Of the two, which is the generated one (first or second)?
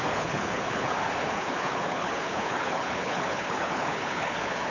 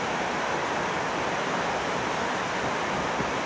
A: first